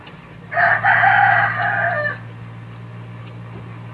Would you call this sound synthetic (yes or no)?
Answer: no